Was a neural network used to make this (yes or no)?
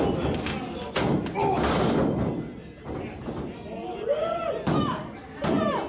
no